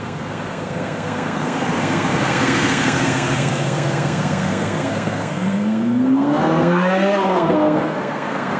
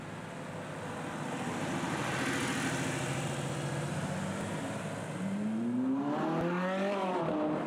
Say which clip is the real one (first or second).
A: second